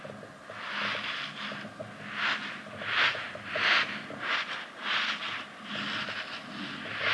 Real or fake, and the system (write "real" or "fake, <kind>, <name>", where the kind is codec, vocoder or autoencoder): real